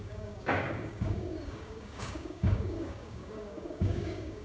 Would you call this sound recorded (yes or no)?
no